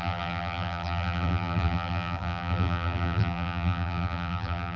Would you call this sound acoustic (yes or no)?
no